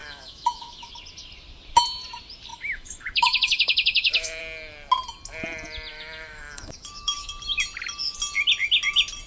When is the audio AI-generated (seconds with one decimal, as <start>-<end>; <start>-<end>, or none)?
0.0-0.9; 2.5-4.4; 5.9-7.3